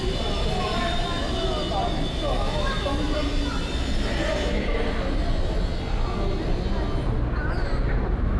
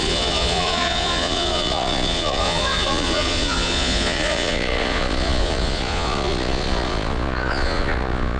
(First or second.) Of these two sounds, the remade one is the second